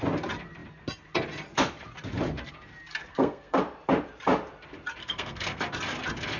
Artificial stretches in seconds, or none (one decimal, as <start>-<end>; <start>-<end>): 3.1-3.6; 5.0-5.6